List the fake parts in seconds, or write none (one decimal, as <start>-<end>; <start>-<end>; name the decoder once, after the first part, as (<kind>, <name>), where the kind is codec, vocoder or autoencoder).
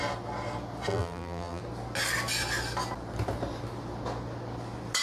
0.9-1.6 (vocoder, BigVGAN v2)